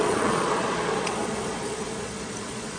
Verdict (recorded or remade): remade